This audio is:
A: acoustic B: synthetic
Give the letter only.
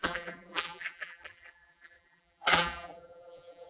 B